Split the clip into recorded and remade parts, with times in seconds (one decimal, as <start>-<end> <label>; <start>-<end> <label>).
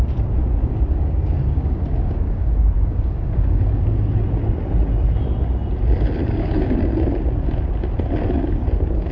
0.0-0.6 recorded; 0.6-4.1 remade; 4.1-6.2 recorded; 6.2-6.8 remade; 6.8-9.1 recorded